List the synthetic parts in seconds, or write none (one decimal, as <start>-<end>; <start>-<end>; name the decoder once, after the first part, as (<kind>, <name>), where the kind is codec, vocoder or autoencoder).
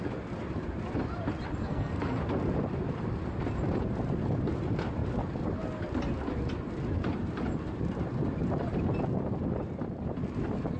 1.6-2.2 (codec, SNAC)